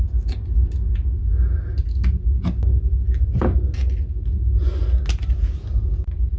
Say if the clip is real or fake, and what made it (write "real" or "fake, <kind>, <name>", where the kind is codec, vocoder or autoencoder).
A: real